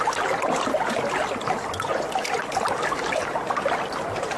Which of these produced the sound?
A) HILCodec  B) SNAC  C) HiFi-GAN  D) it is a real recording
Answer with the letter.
D